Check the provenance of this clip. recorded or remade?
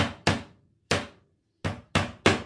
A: recorded